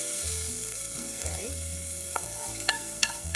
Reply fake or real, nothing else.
fake